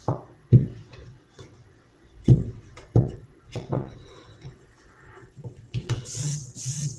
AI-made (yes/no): yes